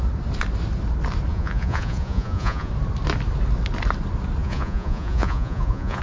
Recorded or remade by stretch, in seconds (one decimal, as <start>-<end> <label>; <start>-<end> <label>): 0.0-1.3 recorded; 1.3-2.7 remade; 2.7-4.4 recorded; 4.4-6.0 remade